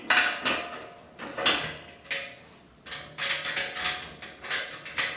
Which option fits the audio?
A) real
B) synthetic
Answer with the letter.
A